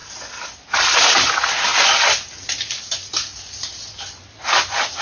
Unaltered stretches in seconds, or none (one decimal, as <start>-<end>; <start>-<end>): 0.0-5.0